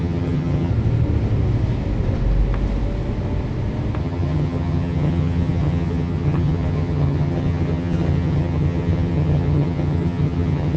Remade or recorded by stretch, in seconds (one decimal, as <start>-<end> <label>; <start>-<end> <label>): 0.0-0.7 remade; 0.7-4.0 recorded; 4.0-10.8 remade